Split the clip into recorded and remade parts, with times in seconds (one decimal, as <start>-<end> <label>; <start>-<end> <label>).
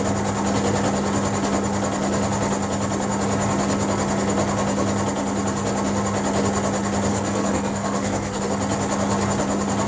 0.0-7.1 recorded; 7.1-8.4 remade; 8.4-9.9 recorded